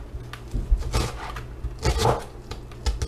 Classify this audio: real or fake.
real